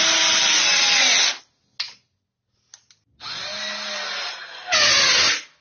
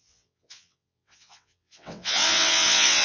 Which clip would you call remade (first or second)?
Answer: second